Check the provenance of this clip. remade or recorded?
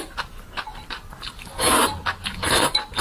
remade